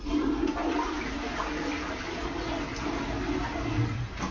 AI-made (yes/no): no